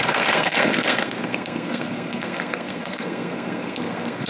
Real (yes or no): no